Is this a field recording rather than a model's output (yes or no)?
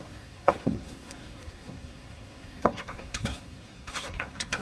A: no